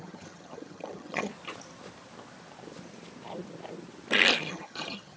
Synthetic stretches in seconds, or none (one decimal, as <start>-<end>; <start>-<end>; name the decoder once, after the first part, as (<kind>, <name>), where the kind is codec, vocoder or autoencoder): 0.0-1.3 (vocoder, HiFi-GAN); 4.4-5.2

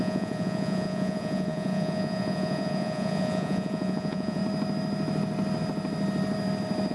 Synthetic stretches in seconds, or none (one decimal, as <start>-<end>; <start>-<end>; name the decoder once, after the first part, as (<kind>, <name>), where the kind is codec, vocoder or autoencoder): 0.0-4.4 (vocoder, Vocos)

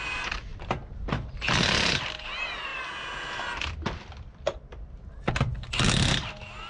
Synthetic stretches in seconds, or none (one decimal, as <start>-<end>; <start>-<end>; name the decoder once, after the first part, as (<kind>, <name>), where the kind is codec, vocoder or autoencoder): none

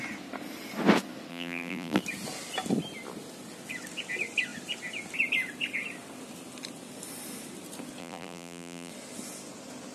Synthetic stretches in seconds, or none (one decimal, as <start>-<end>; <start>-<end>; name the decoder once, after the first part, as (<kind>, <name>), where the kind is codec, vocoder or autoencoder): 1.3-2.0 (vocoder, BigVGAN v2); 8.0-8.9

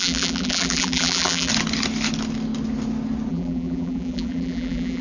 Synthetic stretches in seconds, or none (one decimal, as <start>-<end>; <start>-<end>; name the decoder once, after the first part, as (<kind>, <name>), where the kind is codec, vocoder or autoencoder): 0.0-1.5 (vocoder, BigVGAN v2); 3.3-5.0